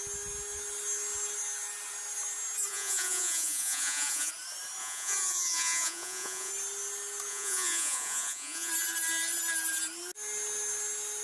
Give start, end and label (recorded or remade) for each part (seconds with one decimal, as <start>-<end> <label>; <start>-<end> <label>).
0.0-2.7 recorded; 2.7-4.3 remade; 4.3-4.8 recorded; 4.8-6.5 remade; 6.5-7.3 recorded; 7.3-8.7 remade; 8.7-11.2 recorded